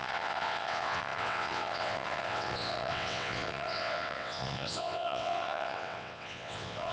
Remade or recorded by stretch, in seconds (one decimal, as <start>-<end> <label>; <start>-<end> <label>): 0.0-6.9 remade